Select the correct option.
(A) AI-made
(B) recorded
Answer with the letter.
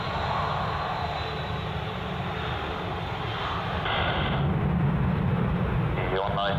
B